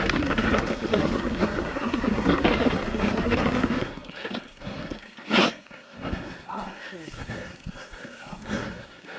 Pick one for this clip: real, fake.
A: fake